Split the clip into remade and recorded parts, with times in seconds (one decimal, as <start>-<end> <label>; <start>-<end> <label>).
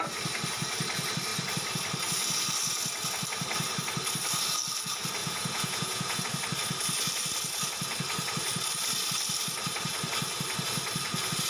0.0-5.2 recorded; 5.2-6.2 remade; 6.2-11.5 recorded